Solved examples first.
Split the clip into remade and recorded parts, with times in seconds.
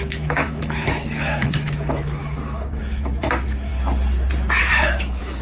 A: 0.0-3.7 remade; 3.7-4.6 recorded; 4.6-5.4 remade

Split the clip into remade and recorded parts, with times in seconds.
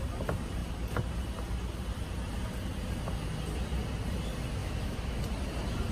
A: 0.0-4.6 recorded; 4.6-5.2 remade; 5.2-5.9 recorded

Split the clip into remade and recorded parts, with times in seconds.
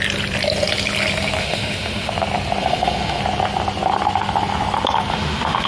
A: 0.0-1.4 recorded; 1.4-2.1 remade; 2.1-2.6 recorded; 2.6-3.2 remade; 3.2-5.1 recorded; 5.1-5.7 remade